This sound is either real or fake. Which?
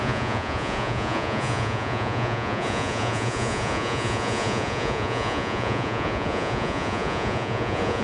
fake